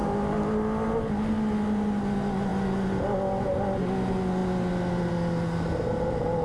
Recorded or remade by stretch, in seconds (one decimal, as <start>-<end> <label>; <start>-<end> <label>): 0.0-6.4 recorded